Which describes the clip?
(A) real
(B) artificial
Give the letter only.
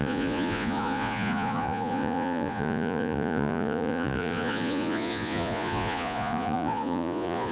B